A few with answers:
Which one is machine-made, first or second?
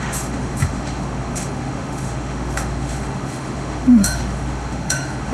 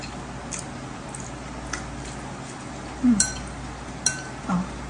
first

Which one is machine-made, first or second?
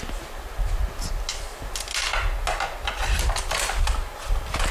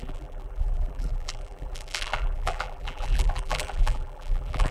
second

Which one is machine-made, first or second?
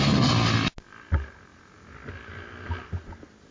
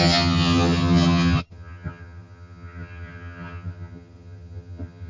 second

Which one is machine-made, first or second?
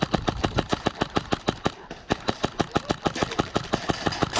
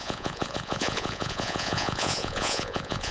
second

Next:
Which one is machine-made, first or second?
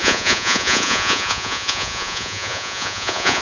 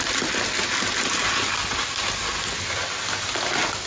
first